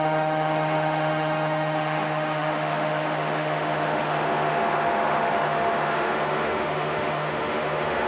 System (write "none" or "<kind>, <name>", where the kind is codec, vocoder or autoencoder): autoencoder, DAC-VAE